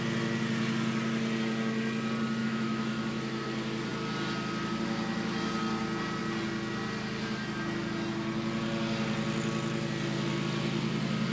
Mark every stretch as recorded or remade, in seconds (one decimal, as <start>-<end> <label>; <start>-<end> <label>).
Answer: 0.0-2.4 recorded; 2.4-3.4 remade; 3.4-11.3 recorded